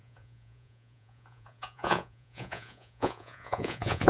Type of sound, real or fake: fake